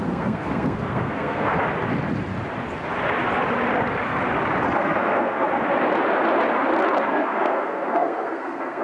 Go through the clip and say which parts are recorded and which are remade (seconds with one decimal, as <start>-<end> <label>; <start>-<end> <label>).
0.0-1.5 remade; 1.5-4.8 recorded; 4.8-5.4 remade; 5.4-7.1 recorded; 7.1-8.8 remade